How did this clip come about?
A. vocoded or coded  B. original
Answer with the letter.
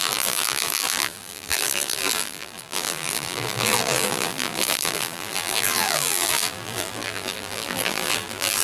A